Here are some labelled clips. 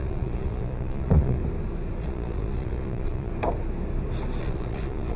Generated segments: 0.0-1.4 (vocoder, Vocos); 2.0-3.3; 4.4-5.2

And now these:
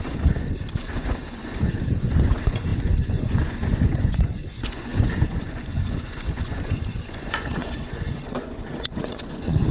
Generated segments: 0.0-9.7 (vocoder, Vocos)

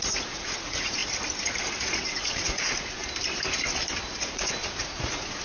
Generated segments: 0.0-1.0 (vocoder, Vocos); 1.9-3.0; 4.2-5.4

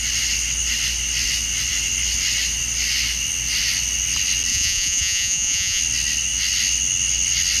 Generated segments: 4.5-5.8 (vocoder, Vocos)

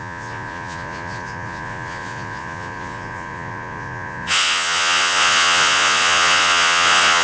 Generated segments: 0.0-7.2 (vocoder, Vocos)